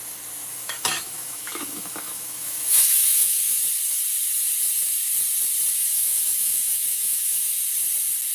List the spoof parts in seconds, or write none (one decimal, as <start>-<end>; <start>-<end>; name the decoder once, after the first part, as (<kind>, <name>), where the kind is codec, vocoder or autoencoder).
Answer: 0.5-3.6 (autoencoder, DAC-VAE); 5.7-7.6